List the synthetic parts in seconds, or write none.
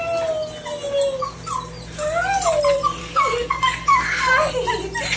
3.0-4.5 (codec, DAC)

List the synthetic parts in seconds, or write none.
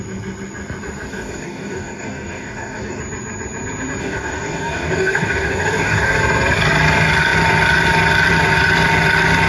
1.1-3.0 (codec, DAC); 4.0-6.2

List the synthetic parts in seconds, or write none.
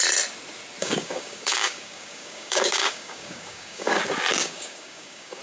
0.8-4.0 (codec, DAC); 4.4-5.4